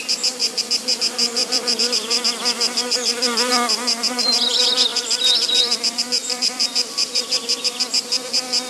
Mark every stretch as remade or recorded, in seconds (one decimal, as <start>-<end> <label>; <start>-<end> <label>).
0.0-1.4 recorded; 1.4-2.2 remade; 2.2-4.9 recorded; 4.9-5.8 remade; 5.8-6.2 recorded; 6.2-7.2 remade; 7.2-8.7 recorded

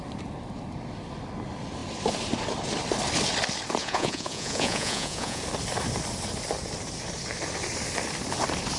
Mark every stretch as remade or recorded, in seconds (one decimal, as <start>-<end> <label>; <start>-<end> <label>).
0.0-3.8 recorded; 3.8-5.4 remade; 5.4-8.8 recorded